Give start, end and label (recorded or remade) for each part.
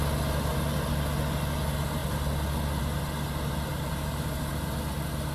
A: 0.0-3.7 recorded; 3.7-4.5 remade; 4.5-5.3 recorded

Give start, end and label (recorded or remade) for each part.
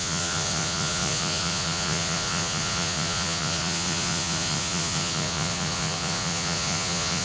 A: 0.0-7.2 remade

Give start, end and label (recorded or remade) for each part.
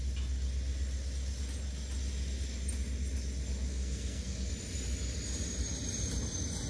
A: 0.0-3.7 recorded; 3.7-4.5 remade; 4.5-6.7 recorded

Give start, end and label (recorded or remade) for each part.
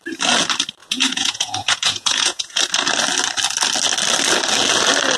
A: 0.0-0.8 recorded; 0.8-2.6 remade; 2.6-5.2 recorded